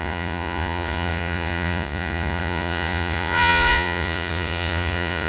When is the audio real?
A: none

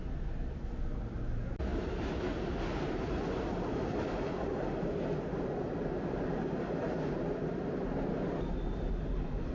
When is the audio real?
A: 0.0-9.5

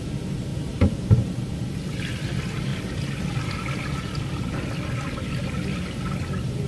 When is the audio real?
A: 0.0-0.5; 1.3-6.7

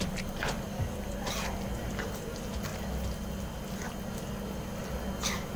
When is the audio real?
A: 0.0-5.6

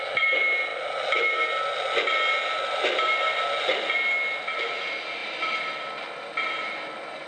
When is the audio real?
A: 0.0-5.2

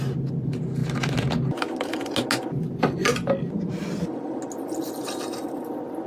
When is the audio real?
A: 0.0-6.1

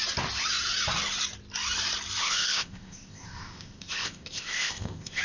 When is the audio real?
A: 0.0-2.2

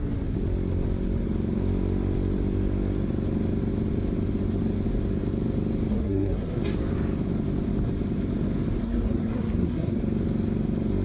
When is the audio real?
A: 0.0-5.9; 6.6-8.8; 10.0-11.0